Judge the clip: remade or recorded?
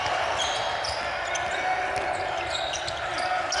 recorded